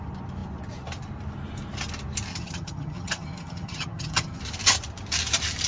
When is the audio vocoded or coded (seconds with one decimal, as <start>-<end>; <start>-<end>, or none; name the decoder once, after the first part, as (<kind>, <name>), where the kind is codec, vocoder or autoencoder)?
2.3-4.4 (vocoder, HiFi-GAN)